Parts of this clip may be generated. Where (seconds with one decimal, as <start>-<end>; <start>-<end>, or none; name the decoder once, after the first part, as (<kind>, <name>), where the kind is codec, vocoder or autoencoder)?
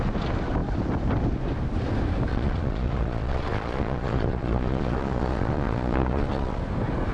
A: 2.3-6.6 (vocoder, Vocos)